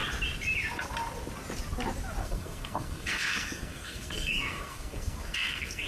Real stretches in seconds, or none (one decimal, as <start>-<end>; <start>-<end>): 0.0-2.2